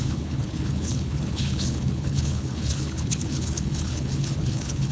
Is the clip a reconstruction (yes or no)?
yes